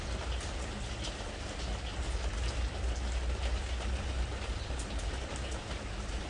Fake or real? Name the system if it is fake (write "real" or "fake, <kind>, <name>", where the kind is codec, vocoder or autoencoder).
real